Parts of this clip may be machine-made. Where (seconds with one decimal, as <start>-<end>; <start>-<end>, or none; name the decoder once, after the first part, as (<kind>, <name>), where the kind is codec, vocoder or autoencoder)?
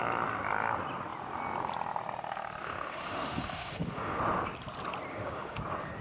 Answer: 2.6-4.2 (autoencoder, DAC-VAE); 5.1-5.6